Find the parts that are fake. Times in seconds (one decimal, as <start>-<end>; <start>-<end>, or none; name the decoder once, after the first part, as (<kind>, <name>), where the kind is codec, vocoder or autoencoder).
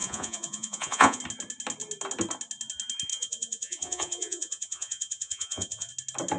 0.0-1.2 (vocoder, Vocos); 3.1-5.9